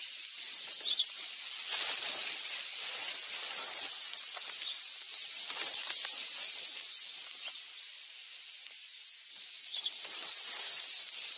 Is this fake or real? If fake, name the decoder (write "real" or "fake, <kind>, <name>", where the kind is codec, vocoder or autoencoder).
real